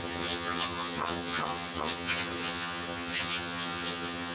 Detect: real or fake fake